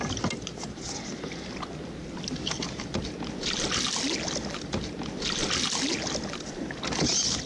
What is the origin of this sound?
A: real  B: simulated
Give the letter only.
A